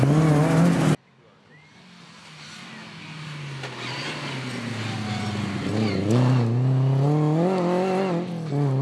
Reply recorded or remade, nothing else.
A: recorded